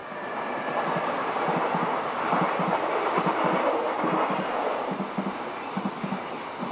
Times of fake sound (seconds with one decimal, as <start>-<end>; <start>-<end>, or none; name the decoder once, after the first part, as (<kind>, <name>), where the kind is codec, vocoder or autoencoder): none